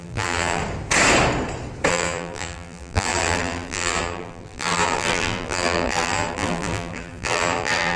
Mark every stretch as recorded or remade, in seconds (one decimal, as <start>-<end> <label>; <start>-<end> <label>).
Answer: 0.0-0.6 remade; 0.6-1.9 recorded; 1.9-8.0 remade